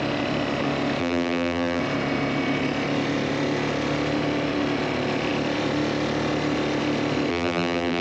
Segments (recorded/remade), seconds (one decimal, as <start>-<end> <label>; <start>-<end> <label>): 0.0-1.0 recorded; 1.0-1.8 remade; 1.8-7.3 recorded; 7.3-8.0 remade